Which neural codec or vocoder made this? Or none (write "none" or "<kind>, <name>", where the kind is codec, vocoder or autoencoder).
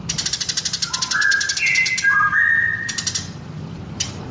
none